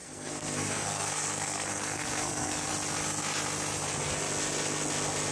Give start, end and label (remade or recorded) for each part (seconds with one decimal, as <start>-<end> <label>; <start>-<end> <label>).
0.0-2.7 remade; 2.7-5.3 recorded